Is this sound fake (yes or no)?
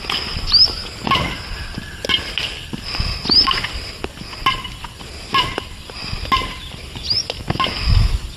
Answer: no